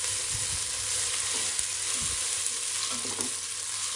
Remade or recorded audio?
recorded